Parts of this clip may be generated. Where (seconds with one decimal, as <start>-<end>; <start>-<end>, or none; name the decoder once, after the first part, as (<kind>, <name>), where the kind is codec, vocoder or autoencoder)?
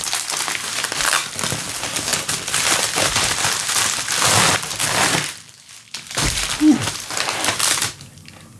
none